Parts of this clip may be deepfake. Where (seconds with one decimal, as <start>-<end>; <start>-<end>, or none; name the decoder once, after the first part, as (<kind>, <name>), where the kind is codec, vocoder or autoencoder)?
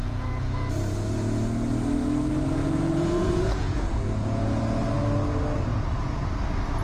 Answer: 0.0-0.7 (vocoder, Vocos); 2.6-4.6; 5.7-6.2